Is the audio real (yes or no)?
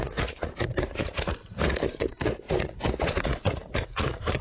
no